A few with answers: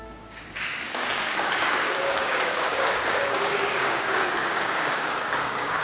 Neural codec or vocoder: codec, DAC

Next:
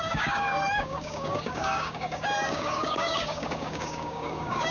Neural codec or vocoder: codec, DAC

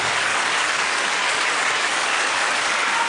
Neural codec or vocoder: codec, DAC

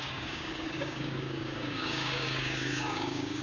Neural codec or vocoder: codec, DAC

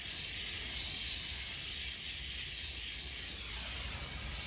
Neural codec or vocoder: none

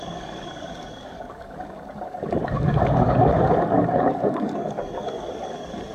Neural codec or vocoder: codec, DAC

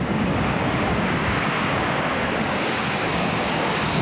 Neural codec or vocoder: codec, DAC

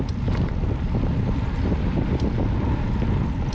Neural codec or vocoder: none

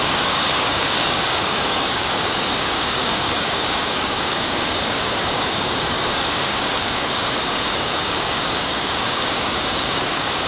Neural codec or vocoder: codec, DAC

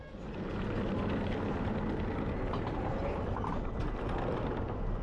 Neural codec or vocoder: none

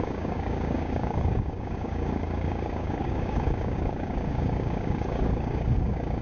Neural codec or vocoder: codec, DAC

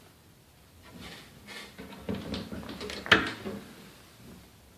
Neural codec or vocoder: none